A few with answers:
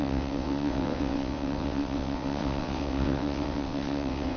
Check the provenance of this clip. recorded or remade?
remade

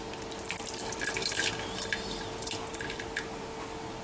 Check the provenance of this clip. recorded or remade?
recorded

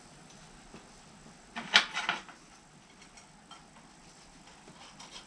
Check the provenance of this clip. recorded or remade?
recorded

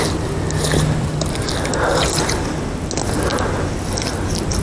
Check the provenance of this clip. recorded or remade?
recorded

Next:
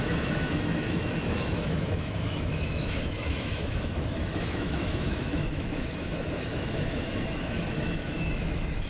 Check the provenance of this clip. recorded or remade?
remade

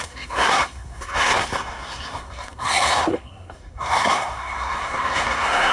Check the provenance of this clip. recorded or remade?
remade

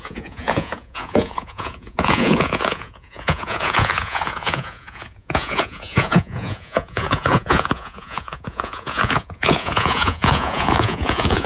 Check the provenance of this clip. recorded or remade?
remade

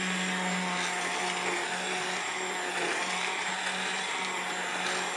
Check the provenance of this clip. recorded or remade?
recorded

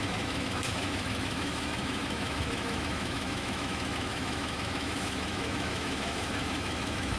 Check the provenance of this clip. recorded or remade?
remade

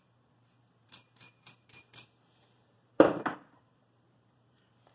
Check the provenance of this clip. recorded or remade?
remade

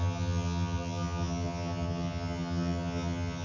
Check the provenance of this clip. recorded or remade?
remade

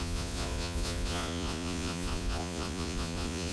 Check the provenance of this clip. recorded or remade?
remade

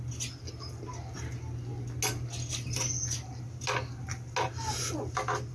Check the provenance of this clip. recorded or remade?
recorded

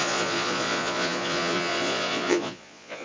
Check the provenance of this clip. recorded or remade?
remade